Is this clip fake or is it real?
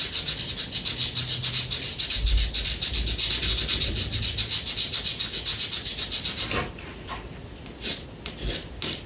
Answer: real